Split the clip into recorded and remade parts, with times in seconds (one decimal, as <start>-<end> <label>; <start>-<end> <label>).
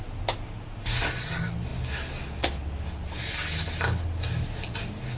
0.0-5.2 recorded